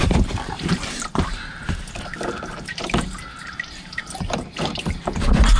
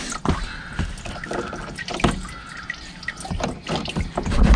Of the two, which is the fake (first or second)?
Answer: first